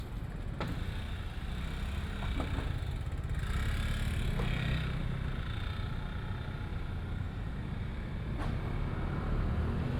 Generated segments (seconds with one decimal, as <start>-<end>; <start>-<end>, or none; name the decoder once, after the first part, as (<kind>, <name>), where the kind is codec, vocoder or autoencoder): none